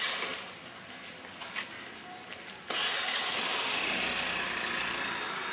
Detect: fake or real real